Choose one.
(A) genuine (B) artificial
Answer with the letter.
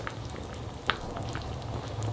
A